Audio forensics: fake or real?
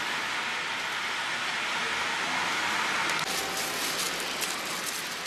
real